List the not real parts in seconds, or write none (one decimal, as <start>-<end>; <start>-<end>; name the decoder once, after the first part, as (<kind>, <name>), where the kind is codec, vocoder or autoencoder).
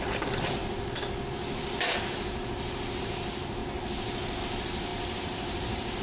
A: 0.0-0.6 (vocoder, BigVGAN v2); 3.0-3.6; 4.4-6.0